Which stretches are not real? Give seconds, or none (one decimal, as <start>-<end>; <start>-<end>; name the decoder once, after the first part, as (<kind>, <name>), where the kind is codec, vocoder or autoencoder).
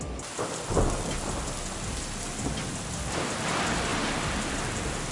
none